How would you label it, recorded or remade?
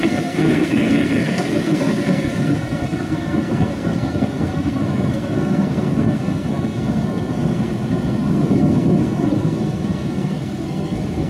remade